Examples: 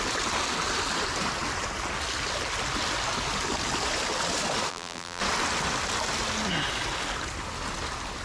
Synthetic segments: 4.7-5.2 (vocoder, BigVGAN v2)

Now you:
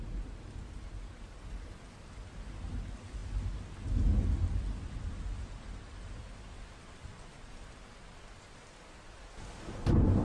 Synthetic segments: none

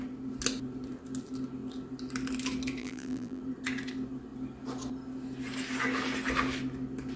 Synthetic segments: 2.8-3.4 (vocoder, BigVGAN v2)

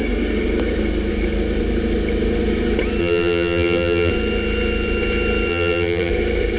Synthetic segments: 3.0-4.1 (vocoder, BigVGAN v2); 5.5-6.1

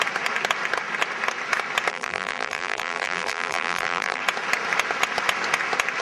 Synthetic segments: 1.9-4.2 (vocoder, BigVGAN v2)

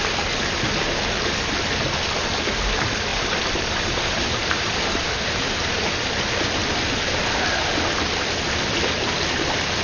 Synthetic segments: 3.1-5.8 (vocoder, BigVGAN v2); 6.6-7.4

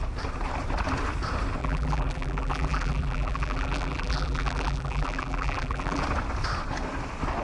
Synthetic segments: 1.6-6.0 (vocoder, BigVGAN v2)